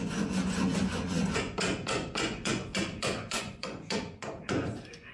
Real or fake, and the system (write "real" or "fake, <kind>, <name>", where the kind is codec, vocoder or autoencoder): fake, vocoder, Vocos